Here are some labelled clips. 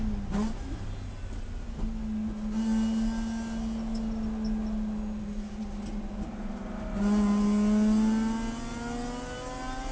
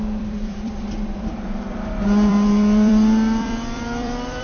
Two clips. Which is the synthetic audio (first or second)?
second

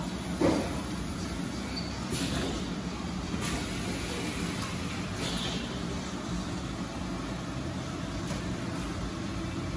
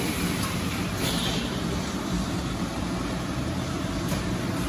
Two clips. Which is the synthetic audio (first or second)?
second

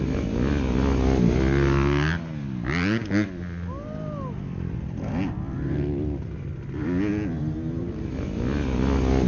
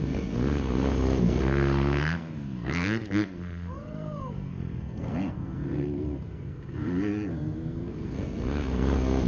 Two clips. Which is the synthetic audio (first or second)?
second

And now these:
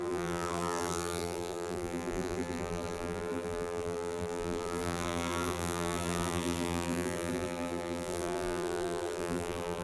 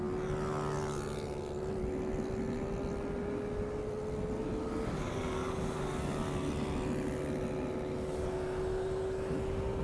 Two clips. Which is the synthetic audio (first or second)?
first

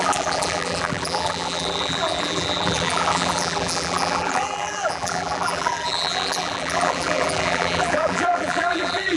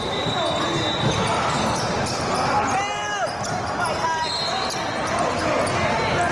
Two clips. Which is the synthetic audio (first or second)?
first